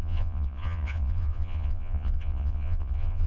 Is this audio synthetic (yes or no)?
yes